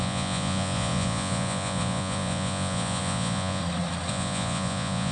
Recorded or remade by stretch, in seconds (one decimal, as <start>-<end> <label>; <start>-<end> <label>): 0.0-3.6 remade; 3.6-4.1 recorded; 4.1-5.1 remade